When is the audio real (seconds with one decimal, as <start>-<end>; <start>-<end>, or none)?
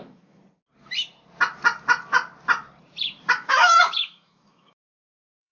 0.4-3.3